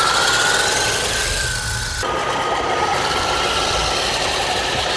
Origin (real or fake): real